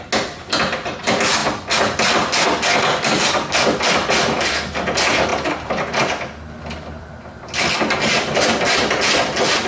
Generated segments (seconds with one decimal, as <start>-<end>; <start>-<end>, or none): none